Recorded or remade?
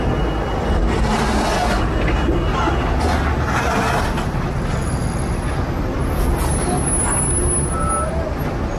recorded